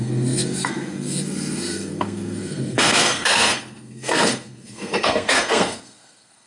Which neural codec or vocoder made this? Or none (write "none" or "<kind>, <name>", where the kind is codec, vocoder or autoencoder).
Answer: codec, SNAC